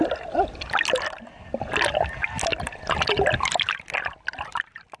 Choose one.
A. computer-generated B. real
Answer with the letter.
B